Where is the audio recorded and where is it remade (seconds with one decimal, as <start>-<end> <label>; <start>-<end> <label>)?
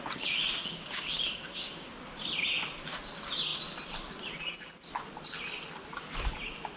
0.0-0.6 recorded; 0.6-1.9 remade; 1.9-6.8 recorded